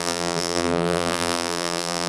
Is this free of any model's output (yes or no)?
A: no